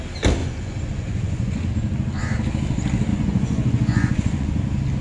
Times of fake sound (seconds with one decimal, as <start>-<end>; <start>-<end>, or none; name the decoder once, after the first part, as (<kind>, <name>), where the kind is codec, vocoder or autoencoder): 0.4-1.7 (vocoder, Vocos); 3.1-4.6